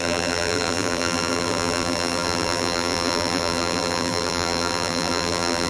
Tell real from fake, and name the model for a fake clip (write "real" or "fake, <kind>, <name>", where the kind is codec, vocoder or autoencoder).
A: fake, vocoder, BigVGAN v2